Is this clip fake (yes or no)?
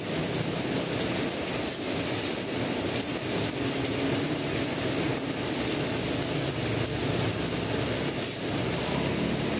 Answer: no